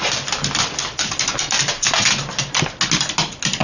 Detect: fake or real real